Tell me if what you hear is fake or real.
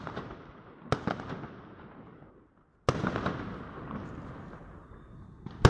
real